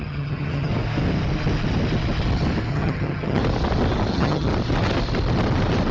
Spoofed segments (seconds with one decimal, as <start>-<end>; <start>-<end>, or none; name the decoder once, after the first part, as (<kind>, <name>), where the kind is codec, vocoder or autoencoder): 0.0-0.7 (vocoder, HiFi-GAN); 2.7-3.4; 4.1-4.5